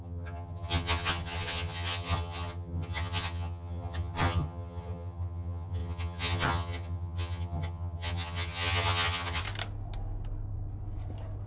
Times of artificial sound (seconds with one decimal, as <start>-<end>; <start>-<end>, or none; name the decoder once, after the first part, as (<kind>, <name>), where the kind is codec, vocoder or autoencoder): 0.0-9.4 (vocoder, HiFi-GAN)